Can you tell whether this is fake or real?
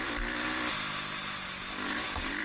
real